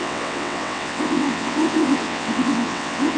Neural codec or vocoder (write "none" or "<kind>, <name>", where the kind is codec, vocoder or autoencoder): vocoder, WaveNeXt